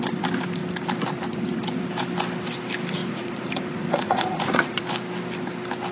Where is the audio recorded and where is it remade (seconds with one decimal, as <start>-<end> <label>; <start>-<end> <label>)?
0.0-3.0 recorded; 3.0-4.8 remade; 4.8-5.9 recorded